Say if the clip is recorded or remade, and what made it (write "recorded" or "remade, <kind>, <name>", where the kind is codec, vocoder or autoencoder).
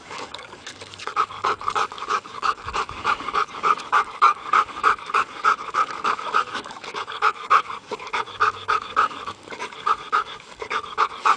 remade, codec, DAC